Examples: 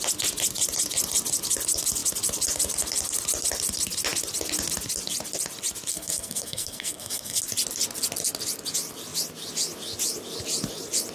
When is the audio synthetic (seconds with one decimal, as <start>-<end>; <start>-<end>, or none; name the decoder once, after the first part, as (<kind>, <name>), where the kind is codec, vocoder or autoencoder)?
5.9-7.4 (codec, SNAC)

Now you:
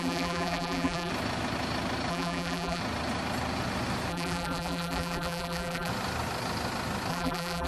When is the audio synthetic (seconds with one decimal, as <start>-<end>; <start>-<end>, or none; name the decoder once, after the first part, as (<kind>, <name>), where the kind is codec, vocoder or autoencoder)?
0.0-1.1 (vocoder, BigVGAN v2); 2.1-2.8; 4.1-5.9; 7.1-7.7

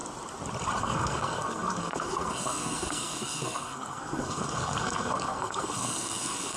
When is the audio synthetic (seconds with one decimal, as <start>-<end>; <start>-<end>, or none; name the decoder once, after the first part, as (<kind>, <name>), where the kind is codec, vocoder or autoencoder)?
0.8-6.6 (codec, SNAC)

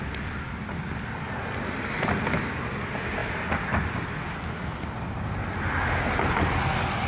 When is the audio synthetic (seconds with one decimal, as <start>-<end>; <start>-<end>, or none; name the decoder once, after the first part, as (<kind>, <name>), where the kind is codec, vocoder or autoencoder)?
none